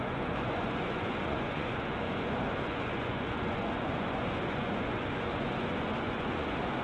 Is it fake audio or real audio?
fake